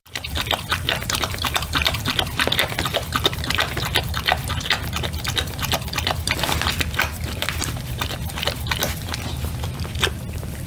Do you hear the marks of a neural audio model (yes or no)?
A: yes